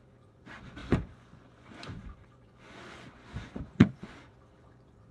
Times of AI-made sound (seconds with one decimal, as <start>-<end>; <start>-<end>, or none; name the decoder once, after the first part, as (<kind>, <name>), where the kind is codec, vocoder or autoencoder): 0.0-5.1 (vocoder, Vocos)

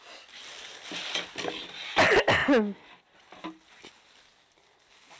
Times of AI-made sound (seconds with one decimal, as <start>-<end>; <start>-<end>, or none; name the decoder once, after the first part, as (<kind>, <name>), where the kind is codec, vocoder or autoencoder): none

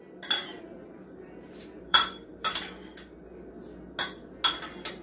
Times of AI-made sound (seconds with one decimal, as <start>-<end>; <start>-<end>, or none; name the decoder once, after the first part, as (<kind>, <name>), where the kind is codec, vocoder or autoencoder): 0.4-2.6 (vocoder, BigVGAN v2)

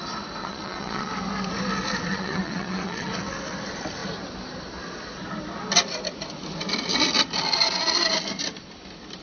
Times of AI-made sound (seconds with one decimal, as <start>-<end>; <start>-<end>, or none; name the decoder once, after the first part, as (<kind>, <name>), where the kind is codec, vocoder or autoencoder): 0.4-1.1 (vocoder, WaveNeXt); 2.1-3.1